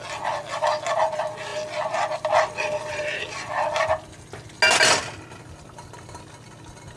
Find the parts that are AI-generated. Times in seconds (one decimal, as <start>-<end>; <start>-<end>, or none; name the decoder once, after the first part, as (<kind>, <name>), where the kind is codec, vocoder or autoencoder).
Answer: none